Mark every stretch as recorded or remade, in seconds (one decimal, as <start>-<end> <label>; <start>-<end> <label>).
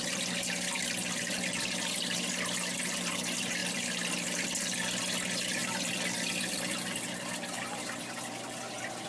0.0-9.1 recorded